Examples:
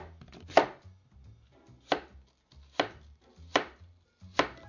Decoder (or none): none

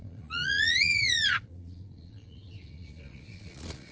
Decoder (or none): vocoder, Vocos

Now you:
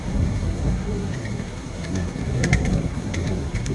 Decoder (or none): codec, SNAC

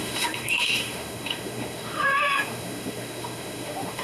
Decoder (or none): autoencoder, DAC-VAE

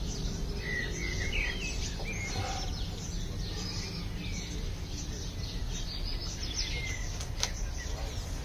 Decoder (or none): none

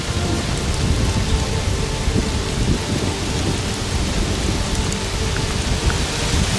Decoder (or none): none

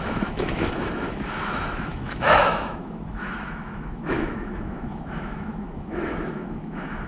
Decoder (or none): autoencoder, DAC-VAE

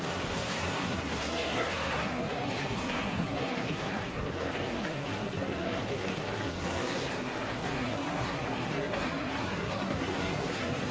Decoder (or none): codec, SNAC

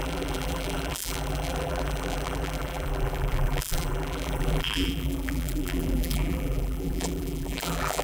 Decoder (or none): vocoder, BigVGAN v2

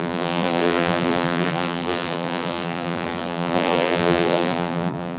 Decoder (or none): vocoder, BigVGAN v2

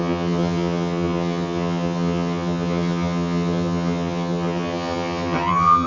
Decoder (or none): vocoder, HiFi-GAN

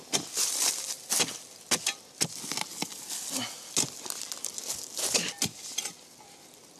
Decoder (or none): none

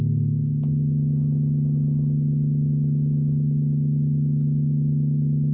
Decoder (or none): none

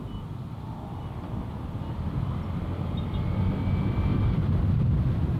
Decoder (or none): none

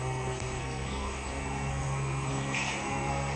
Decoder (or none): codec, SNAC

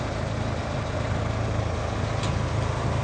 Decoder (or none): none